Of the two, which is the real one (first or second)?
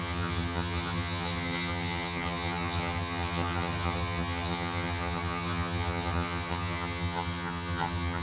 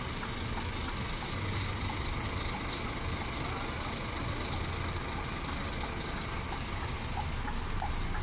second